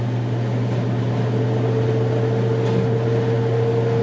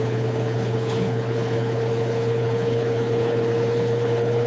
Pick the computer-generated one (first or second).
second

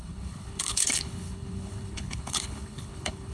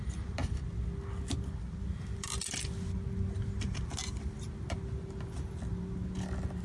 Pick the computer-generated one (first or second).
first